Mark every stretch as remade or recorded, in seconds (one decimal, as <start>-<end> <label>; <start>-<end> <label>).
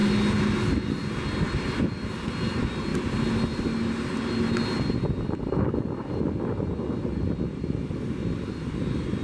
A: 0.0-9.2 recorded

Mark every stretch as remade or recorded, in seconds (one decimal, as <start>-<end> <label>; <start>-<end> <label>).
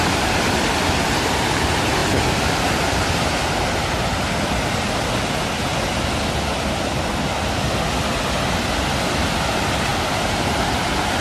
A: 0.0-2.0 recorded; 2.0-3.4 remade; 3.4-11.2 recorded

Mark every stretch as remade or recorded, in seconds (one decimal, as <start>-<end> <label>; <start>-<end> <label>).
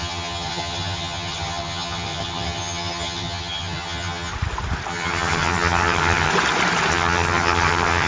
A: 0.0-4.3 remade; 4.3-4.9 recorded; 4.9-6.3 remade; 6.3-6.9 recorded; 6.9-8.1 remade